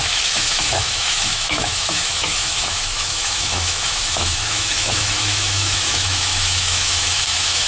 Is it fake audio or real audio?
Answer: fake